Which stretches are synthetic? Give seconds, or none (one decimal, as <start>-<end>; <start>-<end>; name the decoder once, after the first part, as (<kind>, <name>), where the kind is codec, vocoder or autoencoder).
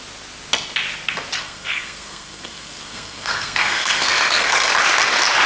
1.4-4.7 (codec, SNAC)